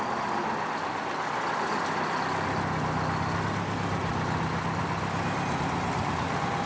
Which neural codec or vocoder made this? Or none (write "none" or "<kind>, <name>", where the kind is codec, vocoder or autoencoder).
none